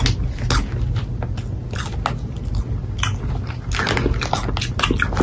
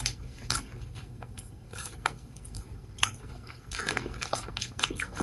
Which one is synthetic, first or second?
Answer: second